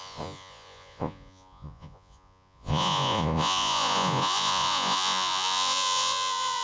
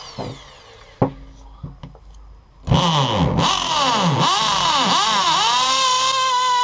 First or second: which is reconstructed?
first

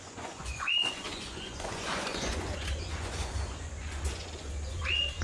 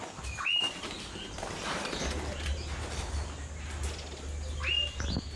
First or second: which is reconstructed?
first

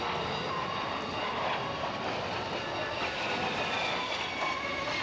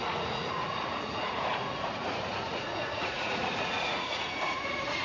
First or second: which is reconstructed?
second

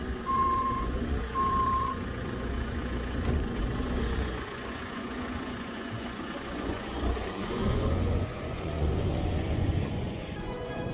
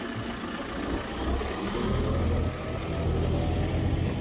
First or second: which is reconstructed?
first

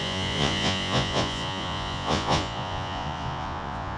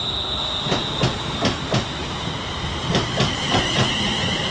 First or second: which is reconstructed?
first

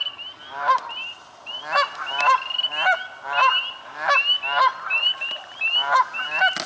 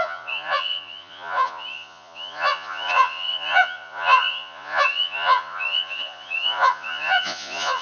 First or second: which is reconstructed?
second